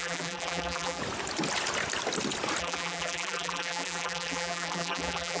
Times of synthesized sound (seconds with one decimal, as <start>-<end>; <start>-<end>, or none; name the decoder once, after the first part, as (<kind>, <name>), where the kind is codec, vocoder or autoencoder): 0.0-1.0 (vocoder, BigVGAN v2); 2.6-5.4